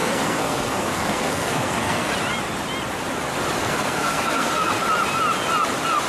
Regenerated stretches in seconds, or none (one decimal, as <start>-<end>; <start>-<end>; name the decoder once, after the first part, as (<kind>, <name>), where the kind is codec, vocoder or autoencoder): 0.0-2.1 (codec, SNAC); 3.6-4.7